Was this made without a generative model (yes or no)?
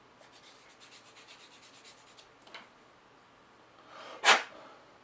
yes